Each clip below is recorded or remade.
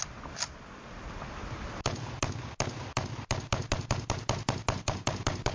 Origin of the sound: recorded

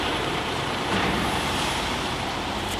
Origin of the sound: remade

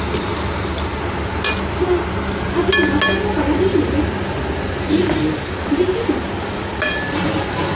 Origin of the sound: recorded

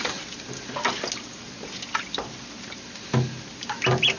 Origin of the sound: recorded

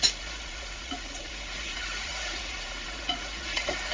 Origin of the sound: remade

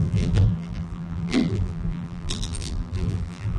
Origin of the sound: remade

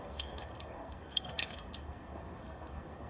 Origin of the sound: remade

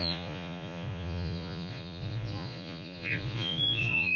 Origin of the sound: remade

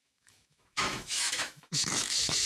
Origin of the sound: remade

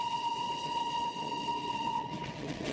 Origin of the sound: remade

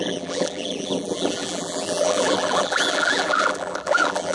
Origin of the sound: remade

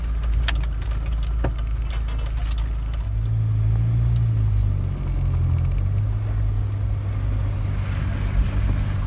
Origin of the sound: recorded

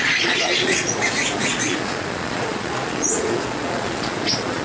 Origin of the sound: remade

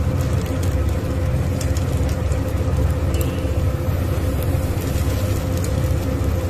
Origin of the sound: recorded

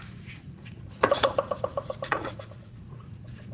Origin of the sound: remade